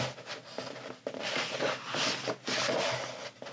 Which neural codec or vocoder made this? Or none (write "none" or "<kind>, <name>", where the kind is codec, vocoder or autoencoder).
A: none